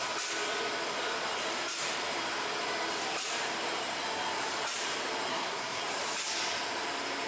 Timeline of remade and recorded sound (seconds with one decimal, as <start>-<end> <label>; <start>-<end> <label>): 0.0-5.3 recorded; 5.3-5.8 remade; 5.8-7.3 recorded